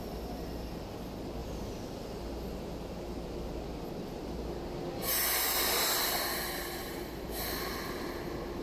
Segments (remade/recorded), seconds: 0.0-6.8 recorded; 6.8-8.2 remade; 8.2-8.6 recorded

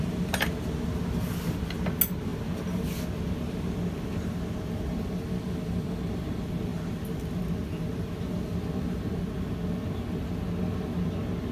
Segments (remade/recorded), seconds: 0.0-11.5 recorded

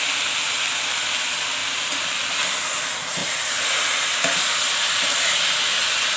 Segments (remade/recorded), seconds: 0.0-1.6 recorded; 1.6-2.2 remade; 2.2-3.2 recorded; 3.2-3.7 remade; 3.7-6.2 recorded